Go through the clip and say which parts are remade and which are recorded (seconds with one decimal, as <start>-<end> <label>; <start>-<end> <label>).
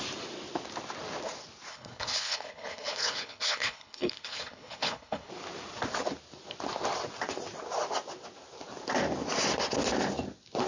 0.0-1.7 recorded; 1.7-5.3 remade; 5.3-10.7 recorded